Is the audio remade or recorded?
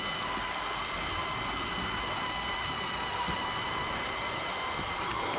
recorded